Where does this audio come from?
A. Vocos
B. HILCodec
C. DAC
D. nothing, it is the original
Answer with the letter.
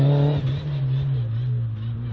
D